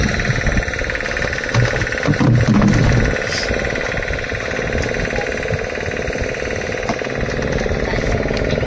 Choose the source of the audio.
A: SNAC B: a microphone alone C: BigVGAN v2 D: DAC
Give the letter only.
B